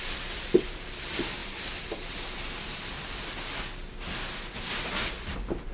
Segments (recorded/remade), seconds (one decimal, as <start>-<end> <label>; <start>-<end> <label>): 0.0-1.4 recorded; 1.4-3.6 remade; 3.6-5.7 recorded